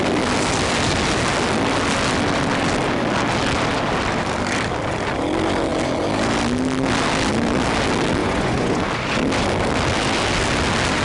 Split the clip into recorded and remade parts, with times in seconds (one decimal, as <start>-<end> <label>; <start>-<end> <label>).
0.0-8.2 recorded; 8.2-8.8 remade; 8.8-11.0 recorded